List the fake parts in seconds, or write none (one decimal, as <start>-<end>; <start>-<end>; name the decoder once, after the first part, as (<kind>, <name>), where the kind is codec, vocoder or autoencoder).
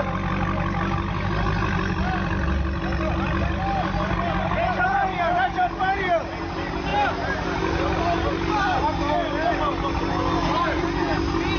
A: none